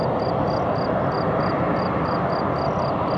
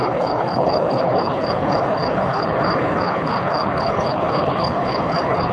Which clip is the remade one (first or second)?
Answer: second